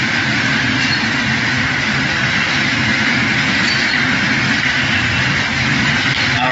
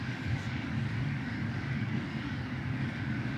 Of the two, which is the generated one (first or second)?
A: second